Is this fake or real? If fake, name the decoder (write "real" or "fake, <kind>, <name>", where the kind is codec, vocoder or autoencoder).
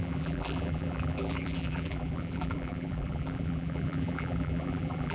fake, vocoder, BigVGAN v2